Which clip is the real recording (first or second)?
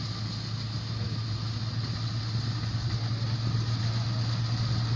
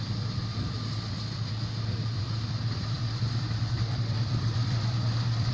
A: first